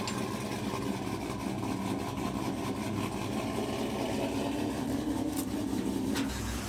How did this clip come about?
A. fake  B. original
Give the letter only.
B